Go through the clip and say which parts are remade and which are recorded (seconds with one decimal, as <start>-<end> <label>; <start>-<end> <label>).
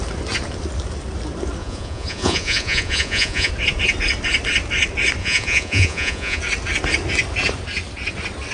0.0-1.6 recorded; 1.6-3.5 remade; 3.5-5.2 recorded; 5.2-6.4 remade; 6.4-8.5 recorded